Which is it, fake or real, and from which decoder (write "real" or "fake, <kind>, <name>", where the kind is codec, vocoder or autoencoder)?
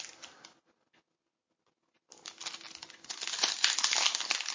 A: real